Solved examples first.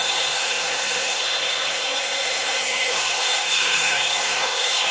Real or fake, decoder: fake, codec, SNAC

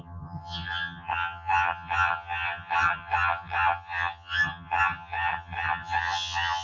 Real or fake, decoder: fake, vocoder, HiFi-GAN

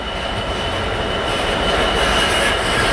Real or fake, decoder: real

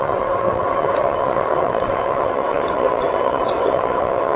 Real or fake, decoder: fake, vocoder, WaveNeXt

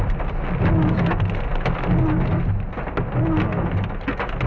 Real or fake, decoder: real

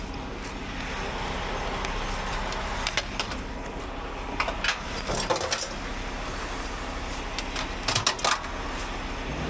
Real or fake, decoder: real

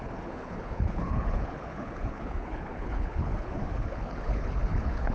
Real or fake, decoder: fake, codec, HILCodec